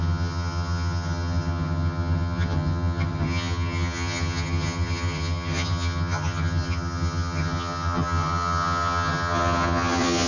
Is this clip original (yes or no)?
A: no